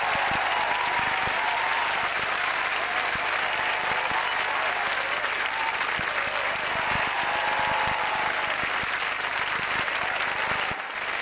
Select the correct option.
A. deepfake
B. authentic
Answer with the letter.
B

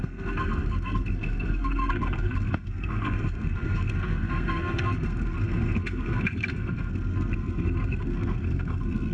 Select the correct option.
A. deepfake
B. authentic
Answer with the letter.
A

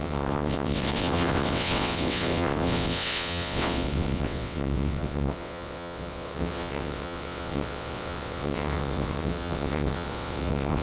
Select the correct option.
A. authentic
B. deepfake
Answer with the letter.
B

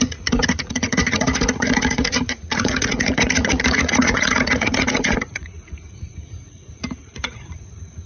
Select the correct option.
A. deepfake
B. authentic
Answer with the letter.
A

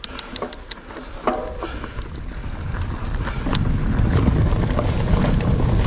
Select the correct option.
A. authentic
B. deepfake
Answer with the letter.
A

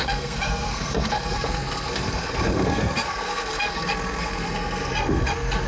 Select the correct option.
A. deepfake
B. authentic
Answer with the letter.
A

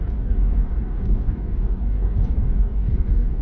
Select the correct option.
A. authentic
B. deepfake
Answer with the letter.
B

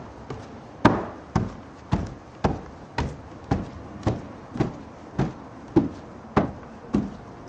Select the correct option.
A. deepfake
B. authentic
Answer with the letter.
B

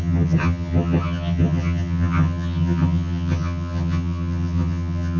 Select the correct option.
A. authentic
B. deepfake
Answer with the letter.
B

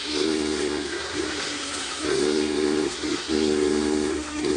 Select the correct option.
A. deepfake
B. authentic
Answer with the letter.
A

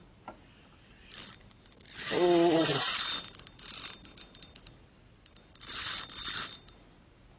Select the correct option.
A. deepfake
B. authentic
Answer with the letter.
B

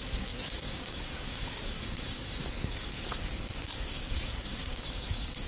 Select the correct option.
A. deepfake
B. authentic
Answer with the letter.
A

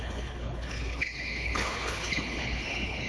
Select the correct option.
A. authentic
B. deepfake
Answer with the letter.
B